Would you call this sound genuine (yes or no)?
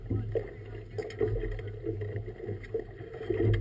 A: yes